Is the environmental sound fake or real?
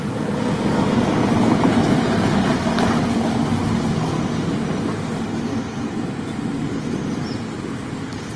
real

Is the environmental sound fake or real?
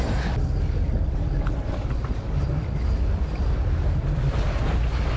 real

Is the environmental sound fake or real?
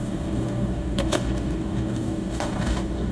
fake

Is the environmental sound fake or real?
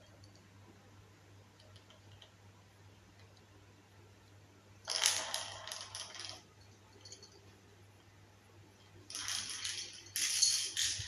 real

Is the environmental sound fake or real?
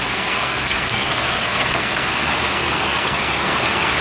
fake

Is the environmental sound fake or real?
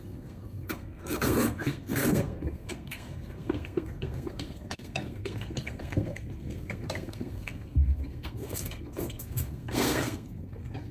fake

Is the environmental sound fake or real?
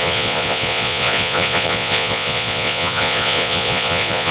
fake